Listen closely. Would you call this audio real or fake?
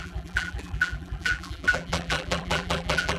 fake